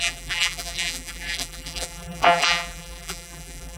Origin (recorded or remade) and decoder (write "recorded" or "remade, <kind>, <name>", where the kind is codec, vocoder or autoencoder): remade, vocoder, BigVGAN v2